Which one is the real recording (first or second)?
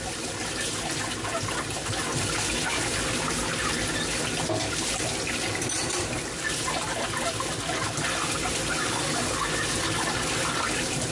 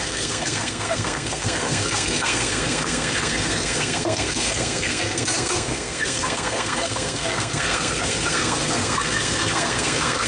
first